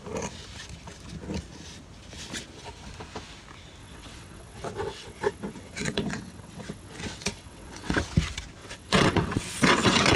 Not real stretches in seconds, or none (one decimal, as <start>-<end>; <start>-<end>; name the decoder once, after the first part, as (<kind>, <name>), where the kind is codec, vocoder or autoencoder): 3.8-8.0 (vocoder, WaveNeXt); 8.6-10.2